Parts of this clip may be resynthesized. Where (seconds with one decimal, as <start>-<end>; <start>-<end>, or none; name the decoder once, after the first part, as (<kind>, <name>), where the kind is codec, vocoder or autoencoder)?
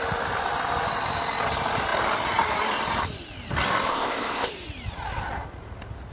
3.9-4.5 (codec, ZipCodec)